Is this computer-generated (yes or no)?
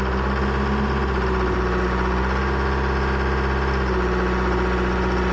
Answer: no